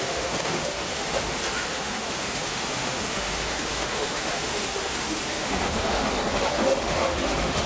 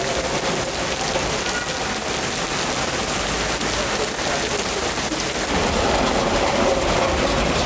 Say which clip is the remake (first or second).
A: first